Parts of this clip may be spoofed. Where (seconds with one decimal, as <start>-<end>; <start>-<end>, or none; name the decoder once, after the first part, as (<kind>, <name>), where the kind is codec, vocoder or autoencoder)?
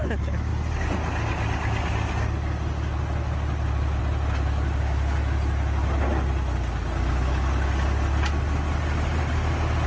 none